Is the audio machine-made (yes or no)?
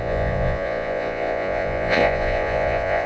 yes